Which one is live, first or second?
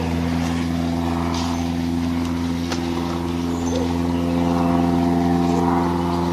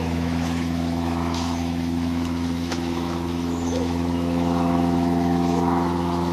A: first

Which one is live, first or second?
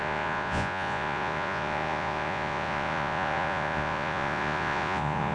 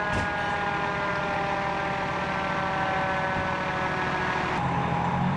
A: second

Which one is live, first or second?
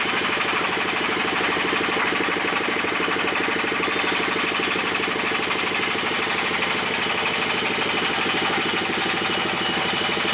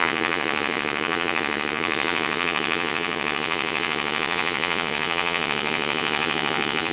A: first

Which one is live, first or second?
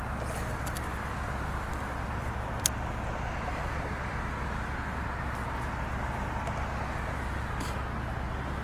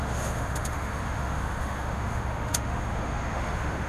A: first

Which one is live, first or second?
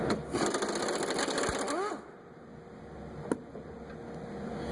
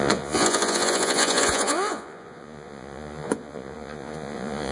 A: first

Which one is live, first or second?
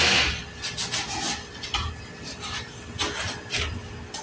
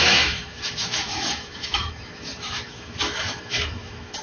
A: first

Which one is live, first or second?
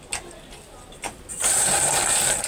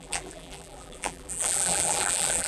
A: first